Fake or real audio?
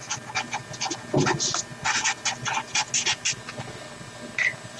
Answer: real